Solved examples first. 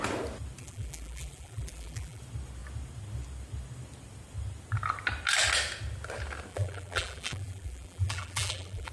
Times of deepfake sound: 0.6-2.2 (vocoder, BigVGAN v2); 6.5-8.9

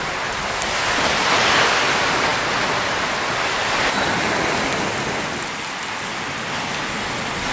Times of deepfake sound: none

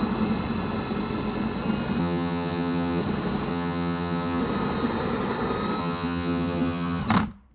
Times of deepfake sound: 2.0-3.0 (vocoder, HiFi-GAN); 3.5-4.4; 5.8-7.0

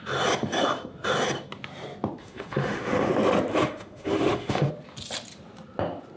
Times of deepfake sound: 2.2-3.1 (autoencoder, DAC-VAE); 3.5-4.7

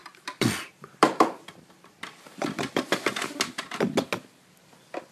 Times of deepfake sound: 0.0-3.1 (vocoder, BigVGAN v2)